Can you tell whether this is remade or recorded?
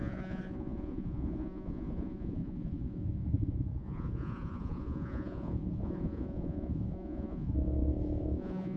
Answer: remade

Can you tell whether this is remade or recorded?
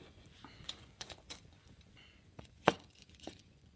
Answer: remade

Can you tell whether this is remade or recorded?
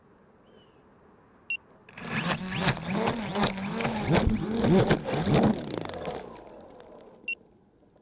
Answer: recorded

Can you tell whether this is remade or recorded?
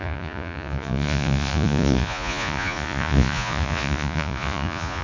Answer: remade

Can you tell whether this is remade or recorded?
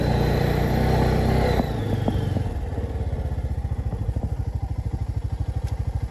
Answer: recorded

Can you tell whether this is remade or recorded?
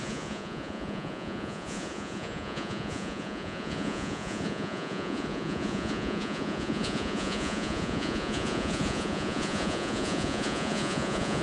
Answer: remade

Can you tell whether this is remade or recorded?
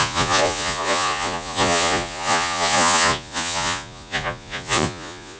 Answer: remade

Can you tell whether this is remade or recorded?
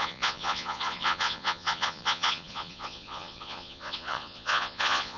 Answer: remade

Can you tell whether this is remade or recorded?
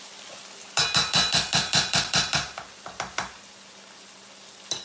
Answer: recorded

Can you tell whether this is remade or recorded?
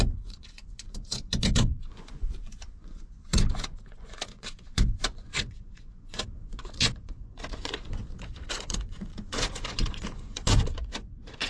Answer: remade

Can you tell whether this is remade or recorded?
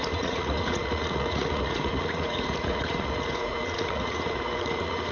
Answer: remade